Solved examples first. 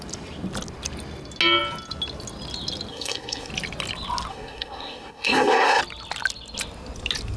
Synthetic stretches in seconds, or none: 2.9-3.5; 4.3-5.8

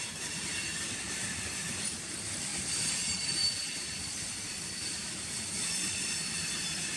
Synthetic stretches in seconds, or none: 0.0-7.0

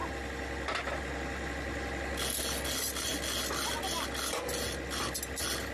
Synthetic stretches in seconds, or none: none